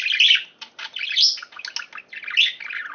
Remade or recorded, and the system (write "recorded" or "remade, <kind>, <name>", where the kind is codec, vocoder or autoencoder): recorded